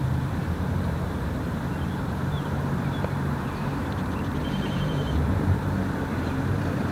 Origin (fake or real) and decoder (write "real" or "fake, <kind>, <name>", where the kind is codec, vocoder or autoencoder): fake, vocoder, BigVGAN v2